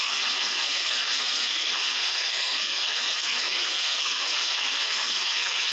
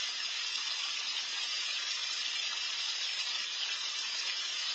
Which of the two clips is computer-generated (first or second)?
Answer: first